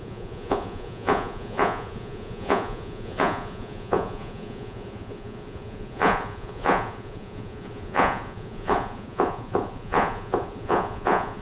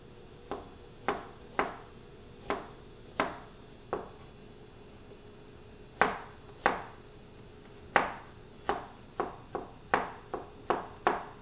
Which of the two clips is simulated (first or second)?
first